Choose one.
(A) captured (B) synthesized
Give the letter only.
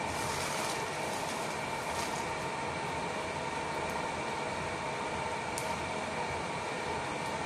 A